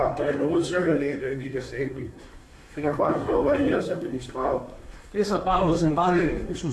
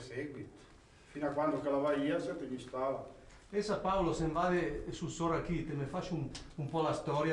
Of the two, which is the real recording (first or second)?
second